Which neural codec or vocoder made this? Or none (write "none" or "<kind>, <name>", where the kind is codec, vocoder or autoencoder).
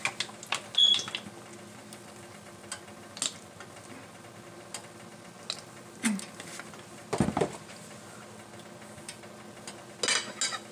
none